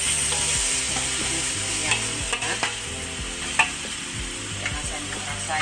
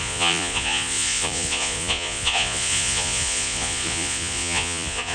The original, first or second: first